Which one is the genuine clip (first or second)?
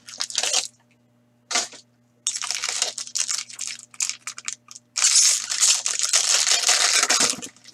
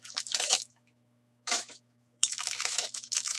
first